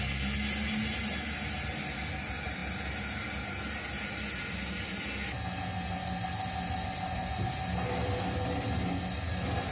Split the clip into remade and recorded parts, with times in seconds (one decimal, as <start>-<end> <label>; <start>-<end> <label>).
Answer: 0.0-9.7 recorded